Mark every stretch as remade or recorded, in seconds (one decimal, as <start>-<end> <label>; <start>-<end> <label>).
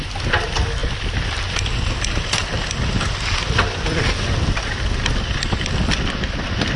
0.0-6.8 recorded